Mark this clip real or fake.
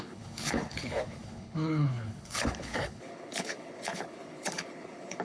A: fake